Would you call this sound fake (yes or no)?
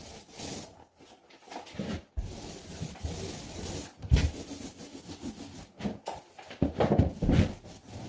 no